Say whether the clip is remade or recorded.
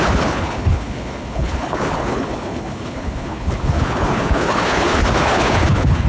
remade